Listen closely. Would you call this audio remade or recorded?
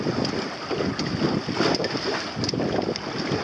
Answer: recorded